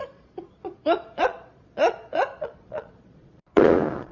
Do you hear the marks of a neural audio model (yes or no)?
yes